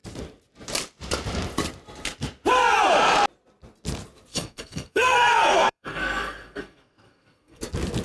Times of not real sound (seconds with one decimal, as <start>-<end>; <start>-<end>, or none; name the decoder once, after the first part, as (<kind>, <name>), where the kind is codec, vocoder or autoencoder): 4.3-7.6 (codec, SNAC)